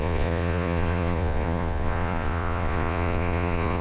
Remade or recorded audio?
remade